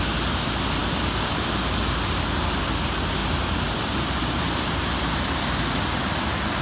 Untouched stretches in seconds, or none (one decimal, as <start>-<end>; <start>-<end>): 0.0-6.6